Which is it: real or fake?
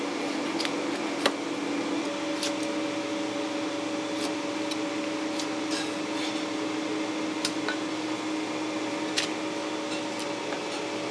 real